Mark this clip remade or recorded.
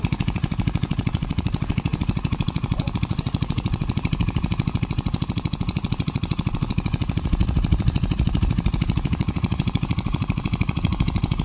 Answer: remade